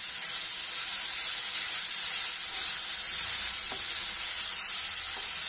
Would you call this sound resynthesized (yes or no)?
no